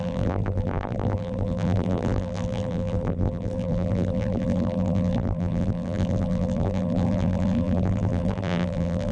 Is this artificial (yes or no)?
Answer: yes